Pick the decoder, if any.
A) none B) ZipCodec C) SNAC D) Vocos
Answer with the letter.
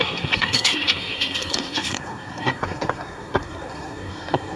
C